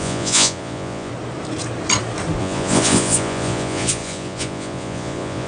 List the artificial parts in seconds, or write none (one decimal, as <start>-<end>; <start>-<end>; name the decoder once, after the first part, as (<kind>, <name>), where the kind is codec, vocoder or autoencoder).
0.0-1.1 (vocoder, Vocos); 2.4-5.5